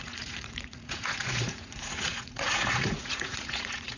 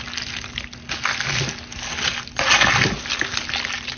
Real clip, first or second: second